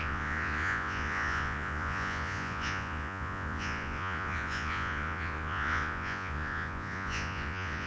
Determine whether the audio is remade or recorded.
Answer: remade